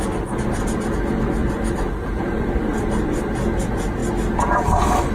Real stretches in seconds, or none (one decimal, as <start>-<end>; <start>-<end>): 0.0-1.4; 3.2-4.0